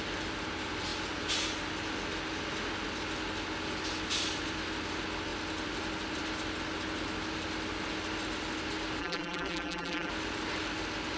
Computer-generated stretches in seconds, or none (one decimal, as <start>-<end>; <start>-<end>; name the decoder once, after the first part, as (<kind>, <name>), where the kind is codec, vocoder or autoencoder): 9.0-10.1 (vocoder, BigVGAN v2)